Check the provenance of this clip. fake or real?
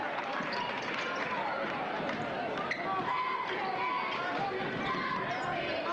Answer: real